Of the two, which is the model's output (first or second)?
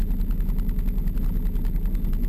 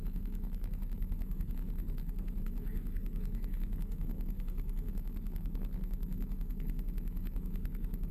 second